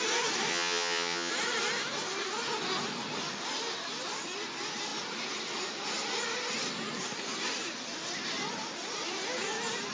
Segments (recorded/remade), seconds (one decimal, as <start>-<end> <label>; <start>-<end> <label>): 0.0-0.5 recorded; 0.5-1.3 remade; 1.3-9.9 recorded